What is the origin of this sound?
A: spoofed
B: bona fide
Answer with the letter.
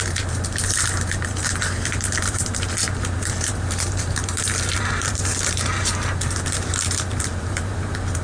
A